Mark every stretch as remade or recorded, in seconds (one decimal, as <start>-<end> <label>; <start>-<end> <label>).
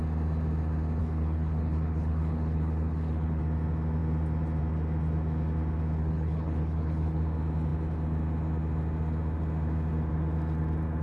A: 0.0-1.0 recorded; 1.0-3.4 remade; 3.4-6.0 recorded; 6.0-7.2 remade; 7.2-11.0 recorded